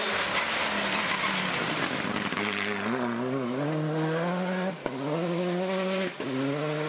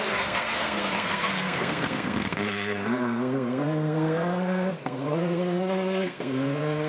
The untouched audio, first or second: first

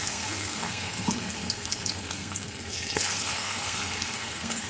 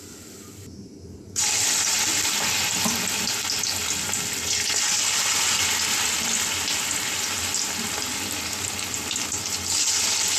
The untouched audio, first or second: second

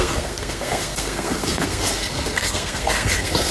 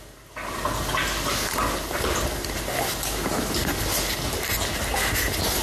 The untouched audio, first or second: second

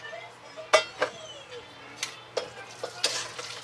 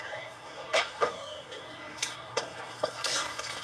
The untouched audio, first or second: first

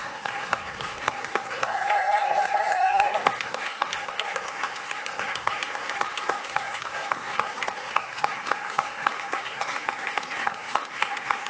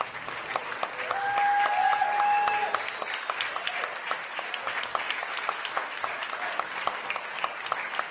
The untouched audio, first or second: second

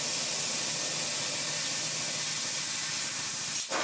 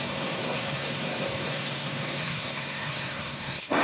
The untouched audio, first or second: first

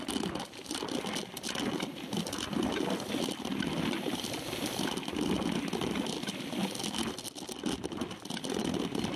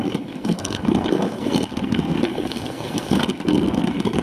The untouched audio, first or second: first